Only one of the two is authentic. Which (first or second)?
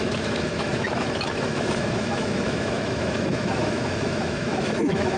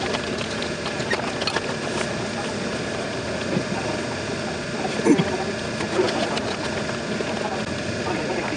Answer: second